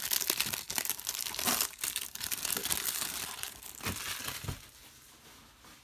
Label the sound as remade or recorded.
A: recorded